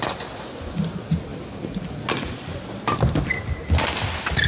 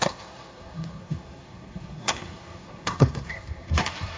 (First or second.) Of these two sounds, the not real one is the second